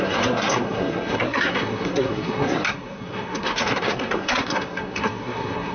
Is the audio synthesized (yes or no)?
yes